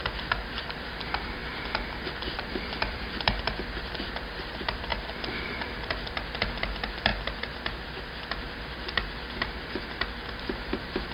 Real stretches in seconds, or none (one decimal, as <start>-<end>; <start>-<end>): 1.4-2.2; 4.9-5.4; 7.1-10.4